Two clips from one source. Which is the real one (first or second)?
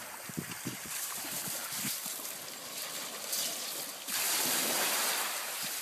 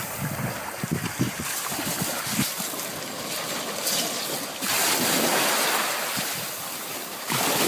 second